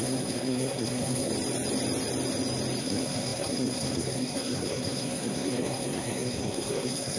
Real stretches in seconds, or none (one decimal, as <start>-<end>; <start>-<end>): 1.3-2.8